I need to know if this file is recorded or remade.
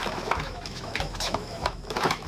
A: remade